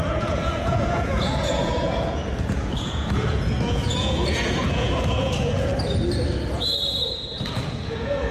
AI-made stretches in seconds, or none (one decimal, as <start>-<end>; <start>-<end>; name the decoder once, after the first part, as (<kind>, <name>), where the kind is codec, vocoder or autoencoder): 0.0-5.7 (vocoder, Vocos); 6.5-8.3

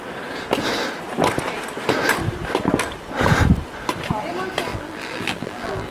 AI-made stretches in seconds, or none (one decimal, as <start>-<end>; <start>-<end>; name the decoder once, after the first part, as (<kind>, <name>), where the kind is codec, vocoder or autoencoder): 4.7-5.9 (vocoder, BigVGAN v2)

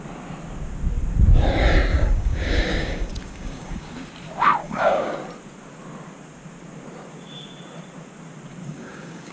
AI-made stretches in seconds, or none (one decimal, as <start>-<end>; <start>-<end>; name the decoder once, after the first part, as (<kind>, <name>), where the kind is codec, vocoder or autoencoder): 1.9-3.9 (codec, DAC); 4.6-5.1; 8.6-9.3

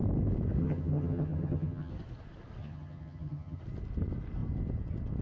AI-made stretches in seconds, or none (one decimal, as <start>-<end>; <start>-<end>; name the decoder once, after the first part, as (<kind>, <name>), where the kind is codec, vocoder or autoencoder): 0.6-1.9 (vocoder, HiFi-GAN); 2.6-3.6

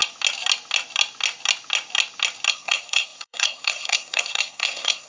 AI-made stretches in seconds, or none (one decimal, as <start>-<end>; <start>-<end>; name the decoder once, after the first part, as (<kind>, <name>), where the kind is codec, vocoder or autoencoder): 2.5-5.1 (codec, SNAC)

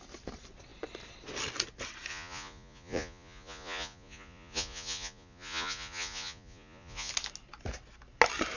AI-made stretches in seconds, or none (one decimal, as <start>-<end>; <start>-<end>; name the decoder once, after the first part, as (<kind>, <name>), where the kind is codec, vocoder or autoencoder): 2.1-7.1 (vocoder, Vocos)

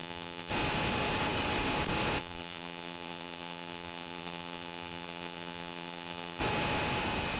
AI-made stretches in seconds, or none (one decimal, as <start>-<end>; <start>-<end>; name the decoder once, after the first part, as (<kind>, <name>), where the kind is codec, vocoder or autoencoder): 0.0-0.5 (vocoder, BigVGAN v2); 2.2-6.4